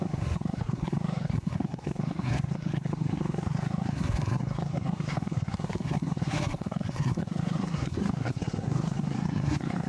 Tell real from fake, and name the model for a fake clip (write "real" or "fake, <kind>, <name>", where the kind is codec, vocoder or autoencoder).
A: fake, codec, SNAC